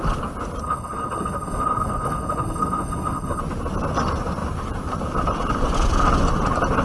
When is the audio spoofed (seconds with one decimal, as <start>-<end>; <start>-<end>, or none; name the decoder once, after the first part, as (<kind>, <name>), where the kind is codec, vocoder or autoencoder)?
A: 0.6-3.4 (codec, HILCodec)